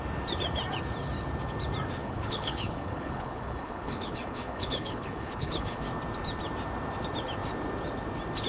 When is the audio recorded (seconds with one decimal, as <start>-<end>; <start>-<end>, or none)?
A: 0.0-2.0; 5.8-8.5